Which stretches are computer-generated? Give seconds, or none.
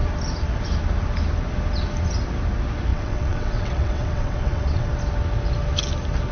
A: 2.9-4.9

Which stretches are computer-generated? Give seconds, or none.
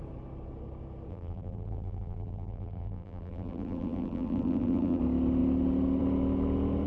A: 1.1-5.0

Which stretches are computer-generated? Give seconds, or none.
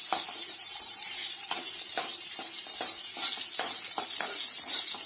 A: 0.4-1.7; 2.1-3.3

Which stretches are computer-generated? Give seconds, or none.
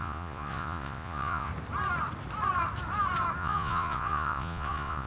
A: 0.0-1.5; 3.4-5.1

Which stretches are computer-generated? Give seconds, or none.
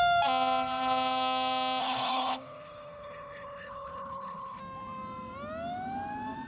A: 1.8-4.6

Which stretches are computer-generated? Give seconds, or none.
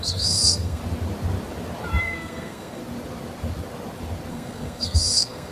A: 0.0-0.8; 2.0-2.8; 4.3-5.5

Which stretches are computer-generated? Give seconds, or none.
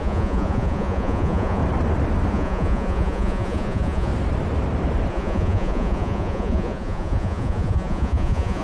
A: 0.0-1.6; 2.3-4.1; 5.1-8.6